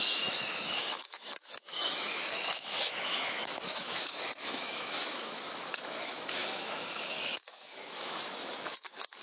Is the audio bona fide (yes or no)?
no